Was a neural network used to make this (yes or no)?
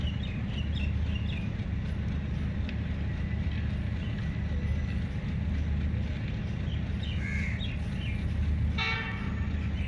no